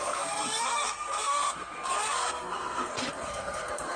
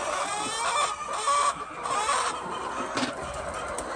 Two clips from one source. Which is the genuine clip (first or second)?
second